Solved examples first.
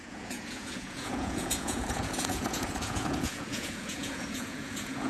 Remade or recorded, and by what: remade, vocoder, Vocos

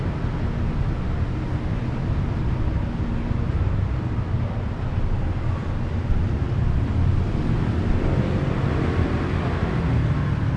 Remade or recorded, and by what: recorded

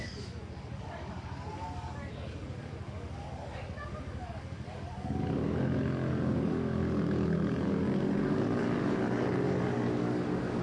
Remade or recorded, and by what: remade, codec, DAC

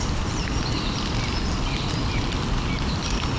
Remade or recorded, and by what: recorded